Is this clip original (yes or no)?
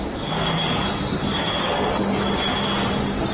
yes